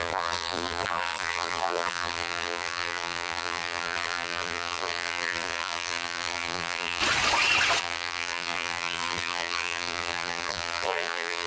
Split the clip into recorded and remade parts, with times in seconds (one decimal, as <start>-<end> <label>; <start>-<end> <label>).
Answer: 0.0-7.0 remade; 7.0-7.8 recorded; 7.8-11.5 remade